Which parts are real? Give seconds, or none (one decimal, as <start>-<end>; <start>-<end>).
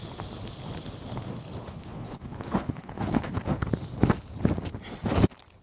0.0-1.6; 3.7-5.6